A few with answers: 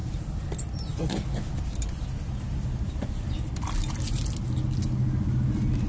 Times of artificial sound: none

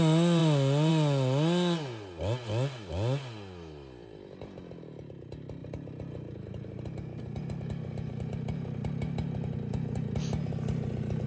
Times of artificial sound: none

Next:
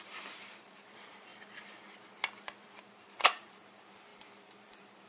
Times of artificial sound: 0.0-1.3 (vocoder, BigVGAN v2); 2.8-5.1

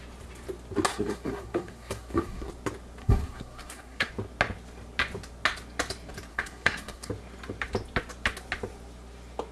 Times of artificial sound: 0.9-2.5 (codec, SNAC); 3.0-4.1; 6.3-7.1

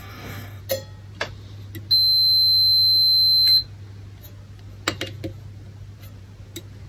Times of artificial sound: 0.0-0.6 (codec, DAC)

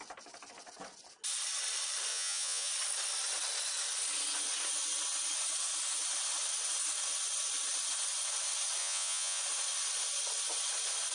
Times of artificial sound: 2.1-2.7 (vocoder, Vocos); 8.8-9.4

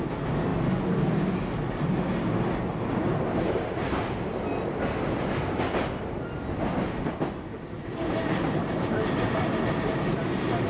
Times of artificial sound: none

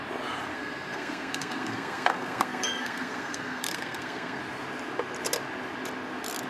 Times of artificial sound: 0.5-4.4 (codec, SNAC)